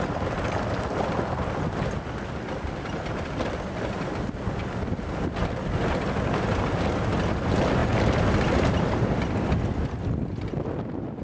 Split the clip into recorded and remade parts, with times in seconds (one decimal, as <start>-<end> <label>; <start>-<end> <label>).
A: 0.0-11.2 recorded

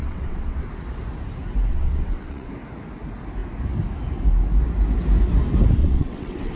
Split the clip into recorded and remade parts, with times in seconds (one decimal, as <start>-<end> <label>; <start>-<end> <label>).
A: 0.0-0.7 remade; 0.7-1.7 recorded; 1.7-2.5 remade; 2.5-5.8 recorded; 5.8-6.6 remade

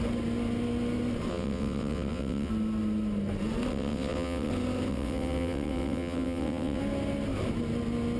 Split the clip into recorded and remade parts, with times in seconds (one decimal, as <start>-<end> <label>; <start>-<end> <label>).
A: 0.0-1.3 recorded; 1.3-2.5 remade; 2.5-3.7 recorded; 3.7-4.5 remade; 4.5-4.9 recorded; 4.9-6.8 remade; 6.8-8.2 recorded

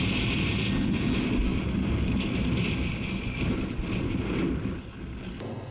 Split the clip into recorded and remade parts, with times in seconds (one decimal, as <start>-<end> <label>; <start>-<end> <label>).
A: 0.0-5.7 recorded